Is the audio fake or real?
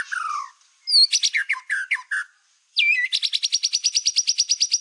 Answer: real